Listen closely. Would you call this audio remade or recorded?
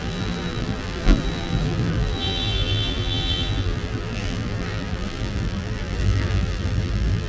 remade